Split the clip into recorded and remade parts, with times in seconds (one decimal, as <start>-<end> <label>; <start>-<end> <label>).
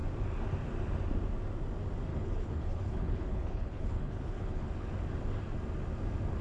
0.0-2.1 recorded; 2.1-4.7 remade; 4.7-6.4 recorded